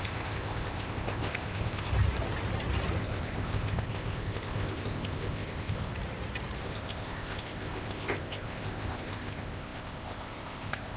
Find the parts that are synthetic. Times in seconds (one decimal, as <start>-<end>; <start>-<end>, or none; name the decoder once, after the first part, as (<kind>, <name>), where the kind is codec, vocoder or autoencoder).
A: 0.0-1.9 (codec, ZipCodec); 3.0-5.9; 6.6-11.0